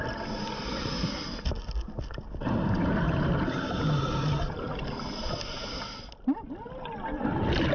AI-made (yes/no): no